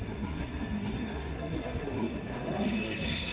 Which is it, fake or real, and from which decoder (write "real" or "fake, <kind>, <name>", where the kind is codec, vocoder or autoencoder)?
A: fake, codec, SNAC